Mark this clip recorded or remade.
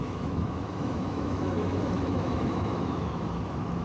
remade